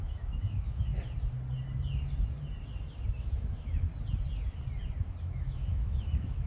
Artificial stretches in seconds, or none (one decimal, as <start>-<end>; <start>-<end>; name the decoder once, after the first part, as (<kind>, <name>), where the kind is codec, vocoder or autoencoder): 0.0-0.9 (autoencoder, DAC-VAE); 3.1-3.9; 5.2-6.5